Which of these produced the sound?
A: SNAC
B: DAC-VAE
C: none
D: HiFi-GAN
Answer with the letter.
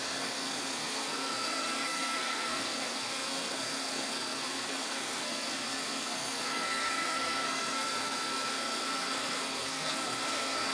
A